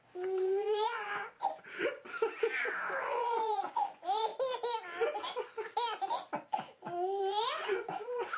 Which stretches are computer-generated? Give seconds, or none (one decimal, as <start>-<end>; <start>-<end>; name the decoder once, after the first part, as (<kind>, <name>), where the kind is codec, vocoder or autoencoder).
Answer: 0.0-1.9 (vocoder, Vocos); 2.8-4.3; 7.2-8.4